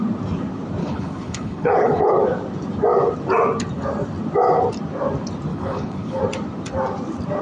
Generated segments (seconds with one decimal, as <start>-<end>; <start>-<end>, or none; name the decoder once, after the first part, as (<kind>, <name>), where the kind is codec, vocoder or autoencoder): 0.8-2.1 (codec, HILCodec); 5.5-6.2